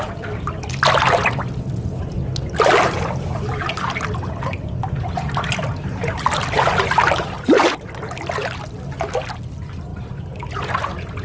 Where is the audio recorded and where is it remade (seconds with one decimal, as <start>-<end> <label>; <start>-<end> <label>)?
0.0-11.2 recorded